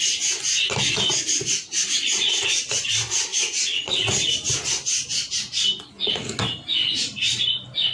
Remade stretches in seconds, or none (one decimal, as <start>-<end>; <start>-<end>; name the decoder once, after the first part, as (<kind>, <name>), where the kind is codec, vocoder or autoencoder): none